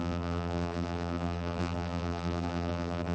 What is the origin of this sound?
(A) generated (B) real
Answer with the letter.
A